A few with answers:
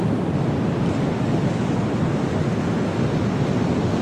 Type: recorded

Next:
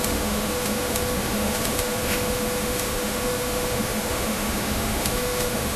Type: remade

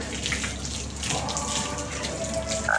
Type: recorded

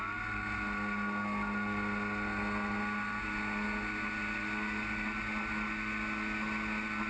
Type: recorded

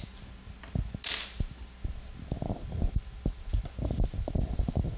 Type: recorded